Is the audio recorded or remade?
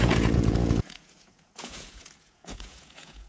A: remade